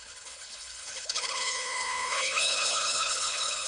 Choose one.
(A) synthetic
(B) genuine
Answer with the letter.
A